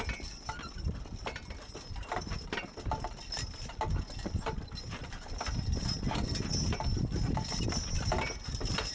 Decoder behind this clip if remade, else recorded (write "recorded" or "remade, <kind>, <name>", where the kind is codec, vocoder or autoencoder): recorded